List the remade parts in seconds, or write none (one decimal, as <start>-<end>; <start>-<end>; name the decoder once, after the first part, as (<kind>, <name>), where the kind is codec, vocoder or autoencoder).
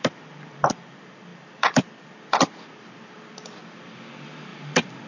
0.0-5.1 (vocoder, BigVGAN v2)